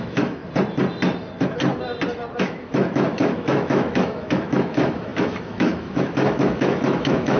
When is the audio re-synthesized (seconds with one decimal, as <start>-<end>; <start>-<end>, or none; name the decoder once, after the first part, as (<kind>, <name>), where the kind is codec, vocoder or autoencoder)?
0.0-0.4 (autoencoder, DAC-VAE); 2.4-7.4